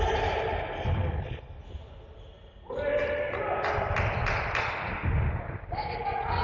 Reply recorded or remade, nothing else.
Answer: recorded